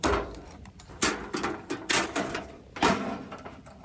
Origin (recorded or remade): remade